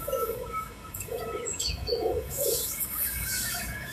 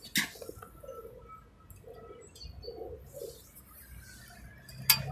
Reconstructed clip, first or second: first